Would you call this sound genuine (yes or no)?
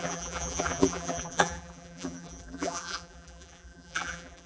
no